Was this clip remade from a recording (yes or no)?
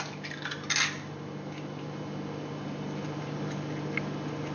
no